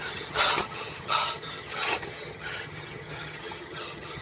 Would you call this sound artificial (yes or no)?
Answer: yes